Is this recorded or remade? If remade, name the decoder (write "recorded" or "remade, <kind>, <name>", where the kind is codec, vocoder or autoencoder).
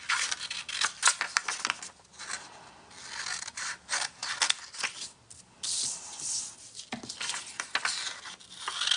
recorded